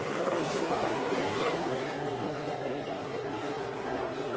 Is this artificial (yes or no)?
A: yes